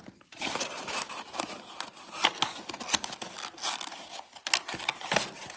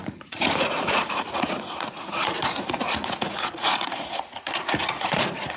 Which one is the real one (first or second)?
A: first